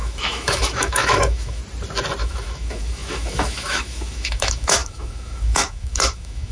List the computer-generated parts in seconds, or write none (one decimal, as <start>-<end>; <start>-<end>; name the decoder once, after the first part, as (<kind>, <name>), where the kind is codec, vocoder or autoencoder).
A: 0.0-1.6 (autoencoder, DAC-VAE); 2.2-6.5